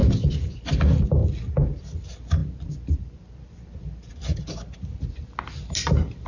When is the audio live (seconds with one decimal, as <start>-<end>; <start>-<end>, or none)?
0.5-1.2; 1.8-2.4; 4.1-6.3